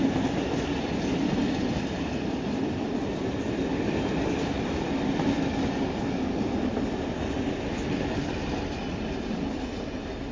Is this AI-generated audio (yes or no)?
no